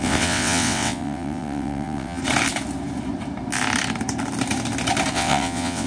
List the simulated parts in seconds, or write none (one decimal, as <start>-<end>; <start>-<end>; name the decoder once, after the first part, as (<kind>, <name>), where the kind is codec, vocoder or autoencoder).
0.0-2.2 (vocoder, WaveNeXt); 5.1-5.9